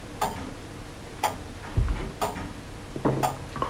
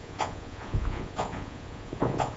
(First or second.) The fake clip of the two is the second